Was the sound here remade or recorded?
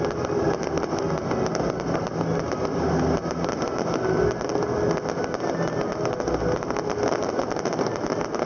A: recorded